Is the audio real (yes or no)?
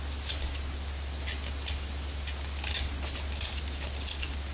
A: yes